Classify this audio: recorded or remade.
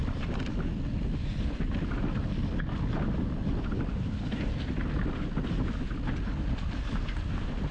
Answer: recorded